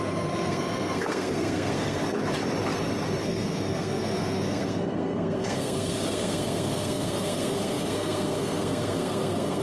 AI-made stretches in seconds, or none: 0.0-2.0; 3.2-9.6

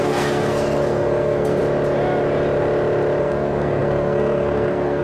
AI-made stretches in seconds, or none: 0.0-1.6; 3.2-5.0